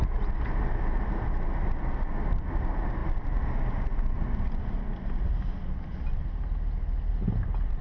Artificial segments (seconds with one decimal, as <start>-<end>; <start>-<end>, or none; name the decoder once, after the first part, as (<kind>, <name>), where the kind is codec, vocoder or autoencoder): none